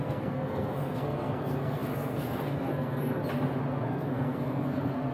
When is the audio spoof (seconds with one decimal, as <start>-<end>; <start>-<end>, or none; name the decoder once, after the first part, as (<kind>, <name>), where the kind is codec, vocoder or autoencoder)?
0.0-3.2 (codec, SNAC); 3.7-5.1